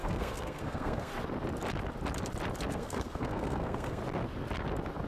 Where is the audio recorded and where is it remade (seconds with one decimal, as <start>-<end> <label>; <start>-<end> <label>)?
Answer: 0.0-1.1 remade; 1.1-2.7 recorded; 2.7-4.0 remade; 4.0-5.1 recorded